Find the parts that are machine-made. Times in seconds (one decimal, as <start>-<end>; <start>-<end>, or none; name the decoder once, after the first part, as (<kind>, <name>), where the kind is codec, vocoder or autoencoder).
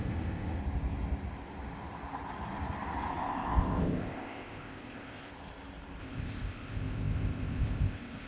0.0-0.6 (codec, ZipCodec); 3.2-5.3; 6.0-8.3